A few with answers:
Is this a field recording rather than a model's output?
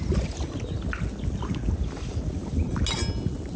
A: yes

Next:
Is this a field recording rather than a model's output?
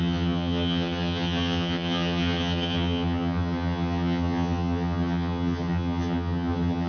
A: no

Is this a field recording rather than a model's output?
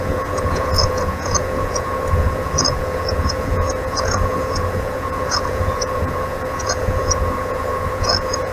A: no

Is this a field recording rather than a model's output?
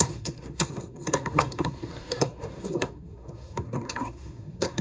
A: no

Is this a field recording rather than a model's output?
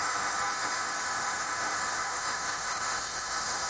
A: no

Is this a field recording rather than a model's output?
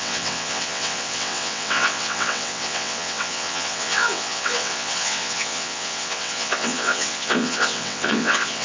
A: no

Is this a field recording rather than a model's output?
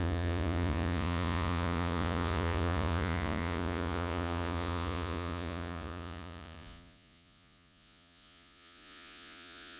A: no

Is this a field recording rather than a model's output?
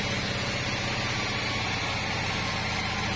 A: yes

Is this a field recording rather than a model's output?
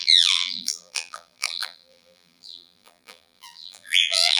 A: no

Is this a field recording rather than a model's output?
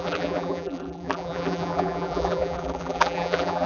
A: no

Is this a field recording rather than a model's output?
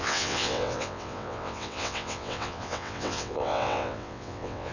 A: no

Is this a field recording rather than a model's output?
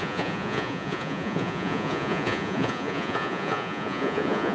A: no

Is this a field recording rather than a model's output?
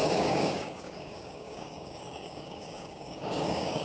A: no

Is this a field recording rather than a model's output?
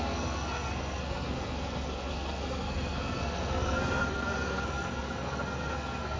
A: no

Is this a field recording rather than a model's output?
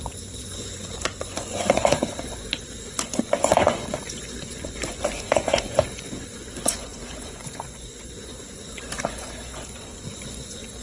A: no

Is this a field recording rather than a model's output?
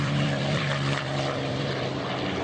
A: no